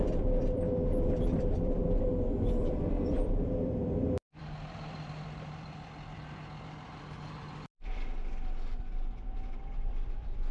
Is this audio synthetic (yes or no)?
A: yes